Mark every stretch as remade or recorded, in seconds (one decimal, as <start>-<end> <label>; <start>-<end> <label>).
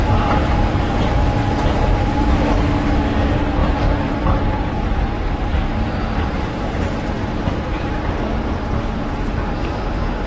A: 0.0-3.6 recorded; 3.6-8.0 remade; 8.0-10.3 recorded